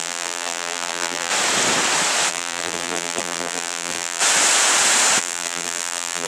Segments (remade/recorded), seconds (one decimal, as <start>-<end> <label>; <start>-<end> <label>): 0.0-1.3 remade; 1.3-2.3 recorded; 2.3-4.2 remade; 4.2-5.2 recorded; 5.2-6.3 remade